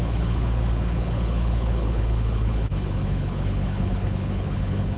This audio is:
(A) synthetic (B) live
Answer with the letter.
A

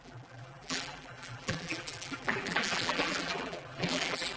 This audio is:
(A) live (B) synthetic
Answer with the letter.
B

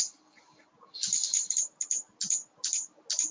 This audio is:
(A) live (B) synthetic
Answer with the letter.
A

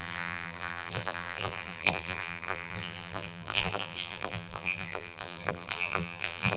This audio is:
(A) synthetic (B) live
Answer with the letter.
A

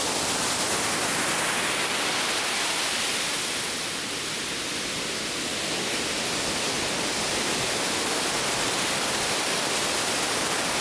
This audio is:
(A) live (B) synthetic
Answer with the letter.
A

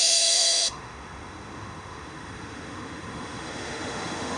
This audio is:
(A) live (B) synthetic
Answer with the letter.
B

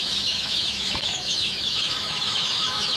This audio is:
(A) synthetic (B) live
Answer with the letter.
A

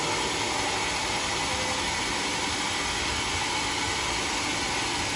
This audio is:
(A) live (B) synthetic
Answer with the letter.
A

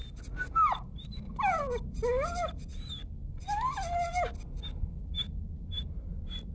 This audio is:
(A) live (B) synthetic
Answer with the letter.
A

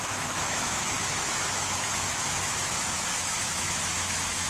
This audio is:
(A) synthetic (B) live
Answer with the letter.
A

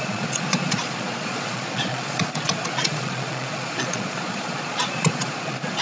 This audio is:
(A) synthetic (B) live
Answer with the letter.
A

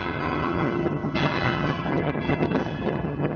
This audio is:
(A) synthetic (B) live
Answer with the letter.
A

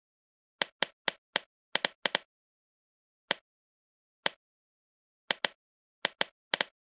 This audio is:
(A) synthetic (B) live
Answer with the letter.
B